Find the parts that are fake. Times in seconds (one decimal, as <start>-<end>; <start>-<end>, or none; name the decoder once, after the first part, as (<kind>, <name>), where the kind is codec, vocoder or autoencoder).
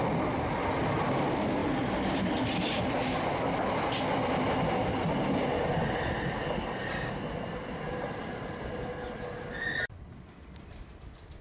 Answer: none